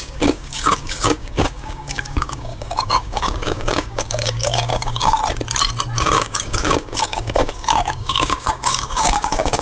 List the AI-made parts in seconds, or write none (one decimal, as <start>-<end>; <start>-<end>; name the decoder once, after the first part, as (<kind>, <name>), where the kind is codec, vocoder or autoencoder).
0.0-5.2 (codec, DAC); 6.0-9.6